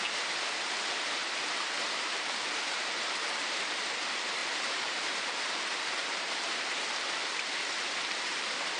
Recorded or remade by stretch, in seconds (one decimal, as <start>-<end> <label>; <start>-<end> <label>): 0.0-1.2 recorded; 1.2-3.5 remade; 3.5-4.4 recorded; 4.4-5.1 remade; 5.1-6.0 recorded; 6.0-6.6 remade; 6.6-8.8 recorded